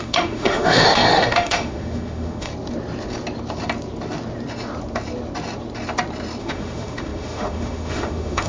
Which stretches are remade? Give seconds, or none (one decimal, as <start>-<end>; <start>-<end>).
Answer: 0.0-2.5; 6.4-8.5